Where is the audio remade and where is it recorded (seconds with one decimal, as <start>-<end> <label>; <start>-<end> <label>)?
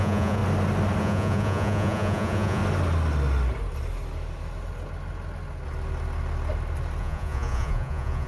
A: 0.0-0.4 remade; 0.4-1.0 recorded; 1.0-2.6 remade; 2.6-7.0 recorded; 7.0-8.3 remade